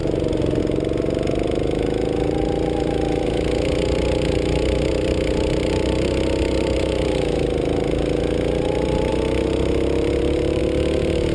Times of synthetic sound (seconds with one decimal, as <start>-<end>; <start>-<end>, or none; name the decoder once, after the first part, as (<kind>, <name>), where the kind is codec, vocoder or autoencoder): 9.1-10.6 (vocoder, BigVGAN v2)